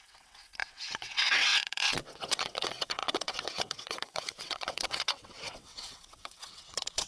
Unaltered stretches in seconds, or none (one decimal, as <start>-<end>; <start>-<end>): none